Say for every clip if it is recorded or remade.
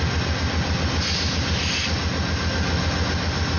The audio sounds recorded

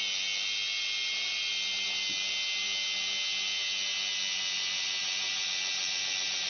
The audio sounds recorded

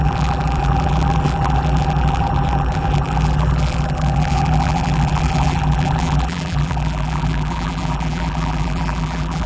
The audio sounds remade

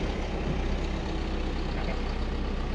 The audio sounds recorded